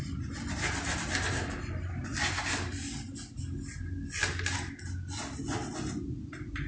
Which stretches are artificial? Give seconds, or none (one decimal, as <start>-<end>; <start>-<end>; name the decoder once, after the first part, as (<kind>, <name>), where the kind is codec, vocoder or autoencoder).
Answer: none